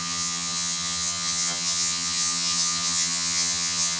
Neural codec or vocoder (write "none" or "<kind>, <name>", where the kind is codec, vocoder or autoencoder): vocoder, HiFi-GAN